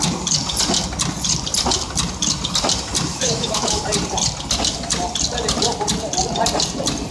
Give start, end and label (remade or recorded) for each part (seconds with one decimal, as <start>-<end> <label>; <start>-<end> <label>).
0.0-3.1 recorded; 3.1-3.8 remade; 3.8-7.1 recorded